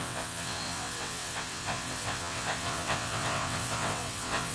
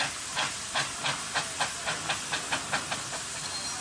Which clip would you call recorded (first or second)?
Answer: second